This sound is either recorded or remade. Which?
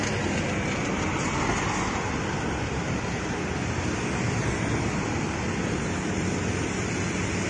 recorded